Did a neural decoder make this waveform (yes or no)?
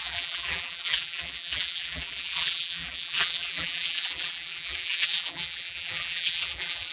yes